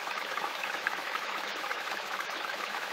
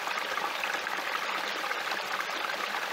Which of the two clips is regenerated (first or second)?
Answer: first